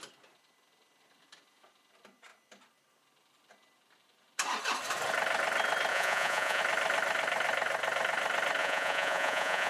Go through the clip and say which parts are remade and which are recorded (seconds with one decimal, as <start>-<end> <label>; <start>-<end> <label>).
0.0-5.9 recorded; 5.9-6.6 remade; 6.6-8.6 recorded; 8.6-9.7 remade